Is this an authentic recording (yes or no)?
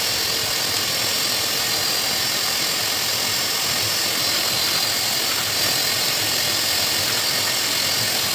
yes